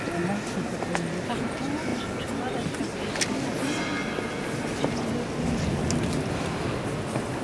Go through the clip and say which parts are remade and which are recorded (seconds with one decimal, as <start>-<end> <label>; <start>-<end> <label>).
0.0-7.4 recorded